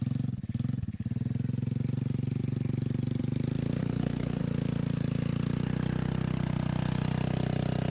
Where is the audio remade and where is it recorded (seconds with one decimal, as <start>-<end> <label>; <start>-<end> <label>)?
0.0-3.8 recorded; 3.8-4.4 remade; 4.4-7.9 recorded